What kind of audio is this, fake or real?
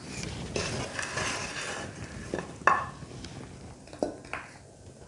real